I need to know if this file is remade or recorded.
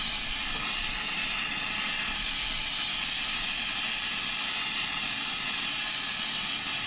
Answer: recorded